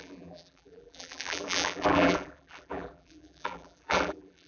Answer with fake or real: fake